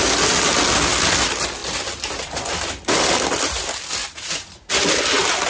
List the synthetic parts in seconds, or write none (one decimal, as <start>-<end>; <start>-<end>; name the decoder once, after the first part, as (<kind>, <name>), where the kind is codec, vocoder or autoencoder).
4.0-4.7 (vocoder, Vocos)

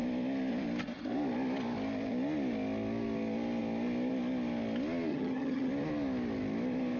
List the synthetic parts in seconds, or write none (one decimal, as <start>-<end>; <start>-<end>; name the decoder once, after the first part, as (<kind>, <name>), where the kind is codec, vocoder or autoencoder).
5.1-5.7 (vocoder, HiFi-GAN)